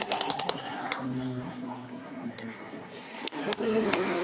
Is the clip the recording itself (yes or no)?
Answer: no